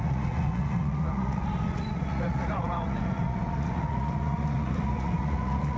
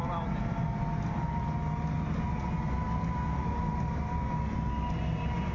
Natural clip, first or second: second